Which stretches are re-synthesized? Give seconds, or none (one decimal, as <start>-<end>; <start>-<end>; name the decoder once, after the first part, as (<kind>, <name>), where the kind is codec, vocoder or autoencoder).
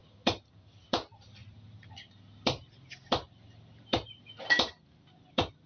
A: 0.0-0.8 (vocoder, BigVGAN v2); 1.4-4.4